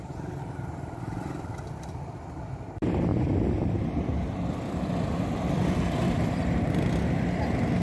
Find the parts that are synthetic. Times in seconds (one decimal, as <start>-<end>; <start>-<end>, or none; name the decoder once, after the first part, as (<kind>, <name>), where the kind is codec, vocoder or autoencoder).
3.1-6.7 (vocoder, BigVGAN v2)